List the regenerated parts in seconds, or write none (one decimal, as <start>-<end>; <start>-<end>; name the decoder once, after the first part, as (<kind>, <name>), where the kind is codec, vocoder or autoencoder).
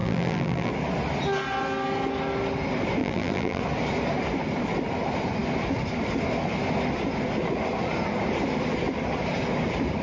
0.0-0.7 (vocoder, BigVGAN v2); 3.0-3.6